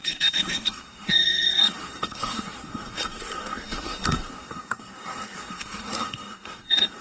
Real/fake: fake